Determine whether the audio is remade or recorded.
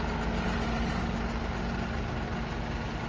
recorded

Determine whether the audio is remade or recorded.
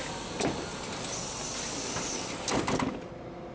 recorded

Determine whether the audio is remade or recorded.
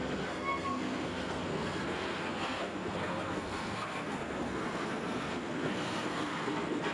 remade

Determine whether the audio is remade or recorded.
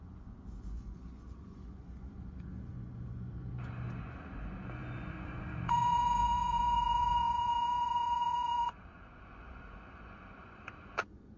remade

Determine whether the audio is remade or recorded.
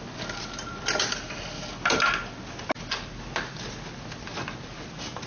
recorded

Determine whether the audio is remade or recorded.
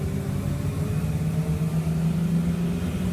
recorded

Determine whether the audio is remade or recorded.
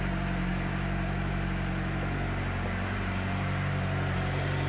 recorded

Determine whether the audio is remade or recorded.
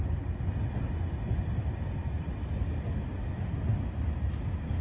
recorded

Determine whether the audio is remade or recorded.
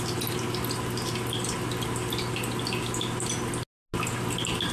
recorded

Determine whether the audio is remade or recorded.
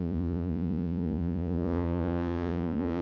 remade